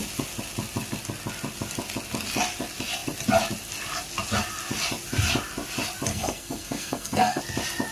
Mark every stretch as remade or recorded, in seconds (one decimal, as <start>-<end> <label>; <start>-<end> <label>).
0.0-6.1 recorded; 6.1-7.4 remade; 7.4-7.9 recorded

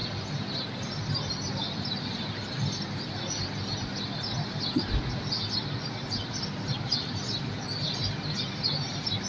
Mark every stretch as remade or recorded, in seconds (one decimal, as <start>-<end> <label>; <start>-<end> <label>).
0.0-9.3 recorded

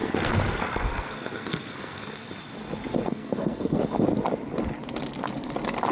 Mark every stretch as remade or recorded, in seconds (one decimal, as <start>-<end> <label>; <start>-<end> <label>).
0.0-2.3 remade; 2.3-3.0 recorded; 3.0-3.8 remade; 3.8-5.9 recorded

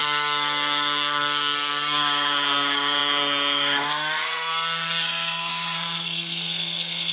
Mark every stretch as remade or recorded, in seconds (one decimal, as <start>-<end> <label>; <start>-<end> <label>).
0.0-7.1 remade